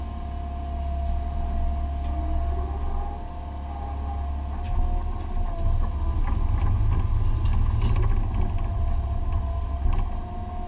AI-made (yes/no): no